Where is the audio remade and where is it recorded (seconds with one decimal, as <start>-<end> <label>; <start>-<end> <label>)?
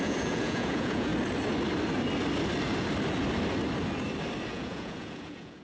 0.0-1.1 remade; 1.1-4.5 recorded; 4.5-5.6 remade